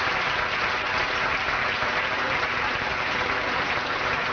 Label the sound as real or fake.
real